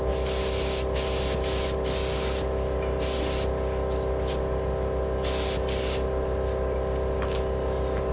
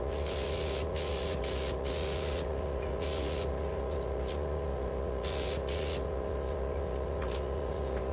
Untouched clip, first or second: first